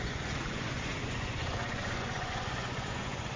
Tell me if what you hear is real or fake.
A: fake